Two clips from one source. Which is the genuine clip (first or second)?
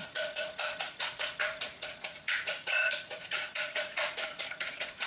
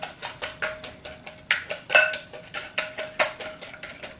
second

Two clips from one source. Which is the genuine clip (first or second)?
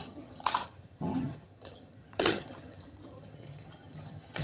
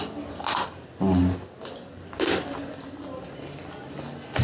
second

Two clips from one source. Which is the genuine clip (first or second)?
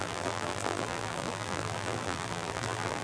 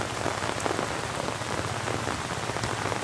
second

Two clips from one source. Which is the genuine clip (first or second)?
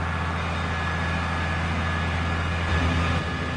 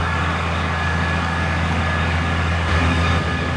first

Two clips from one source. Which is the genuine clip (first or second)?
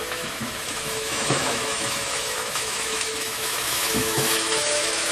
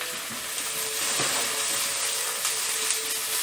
second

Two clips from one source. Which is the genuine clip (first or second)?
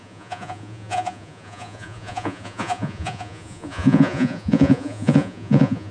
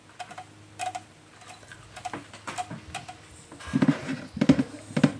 second